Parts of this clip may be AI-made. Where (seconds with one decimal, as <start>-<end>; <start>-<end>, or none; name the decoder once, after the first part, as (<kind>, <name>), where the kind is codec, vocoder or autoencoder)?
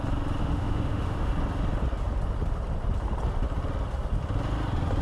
0.4-1.3 (autoencoder, DAC-VAE)